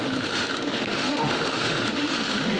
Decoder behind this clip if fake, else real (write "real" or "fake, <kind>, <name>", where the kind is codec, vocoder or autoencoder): fake, autoencoder, DAC-VAE